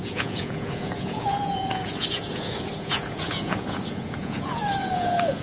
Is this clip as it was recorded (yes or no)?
no